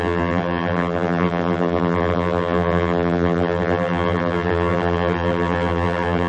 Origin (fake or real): fake